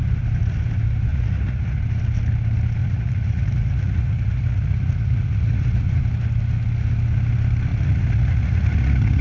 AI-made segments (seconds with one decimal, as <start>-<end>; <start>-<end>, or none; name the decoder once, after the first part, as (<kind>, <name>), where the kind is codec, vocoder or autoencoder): 1.1-1.8 (vocoder, Vocos); 2.8-6.0; 7.7-9.2